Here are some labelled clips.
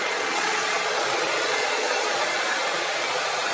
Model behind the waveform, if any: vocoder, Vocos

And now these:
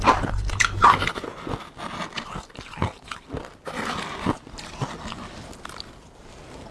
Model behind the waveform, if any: none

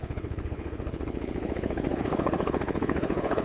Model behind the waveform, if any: codec, HILCodec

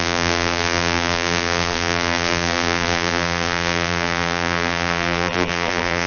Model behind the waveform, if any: vocoder, BigVGAN v2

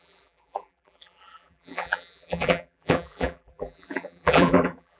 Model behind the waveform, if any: vocoder, BigVGAN v2